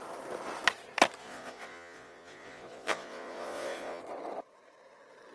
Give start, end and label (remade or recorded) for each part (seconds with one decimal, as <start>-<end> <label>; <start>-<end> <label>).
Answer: 0.0-1.2 recorded; 1.2-4.0 remade; 4.0-5.3 recorded